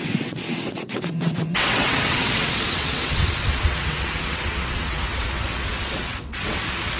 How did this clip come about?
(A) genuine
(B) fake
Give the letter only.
B